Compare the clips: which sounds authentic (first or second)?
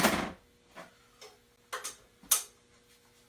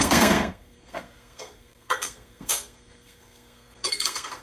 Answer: first